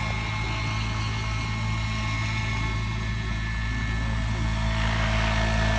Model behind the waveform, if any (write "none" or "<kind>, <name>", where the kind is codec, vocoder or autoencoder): none